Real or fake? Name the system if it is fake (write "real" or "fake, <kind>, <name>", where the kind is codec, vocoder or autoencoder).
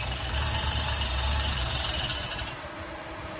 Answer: fake, vocoder, BigVGAN v2